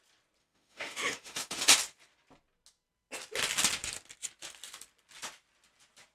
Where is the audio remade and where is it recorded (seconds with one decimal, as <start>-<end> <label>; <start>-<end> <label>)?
0.0-0.4 recorded; 0.4-1.6 remade; 1.6-6.1 recorded